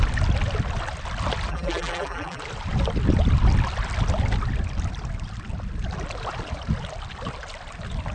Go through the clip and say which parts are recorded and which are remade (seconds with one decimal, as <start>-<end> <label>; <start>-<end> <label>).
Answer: 0.0-1.5 recorded; 1.5-2.4 remade; 2.4-8.1 recorded